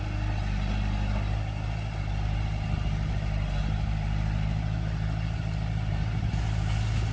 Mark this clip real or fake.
real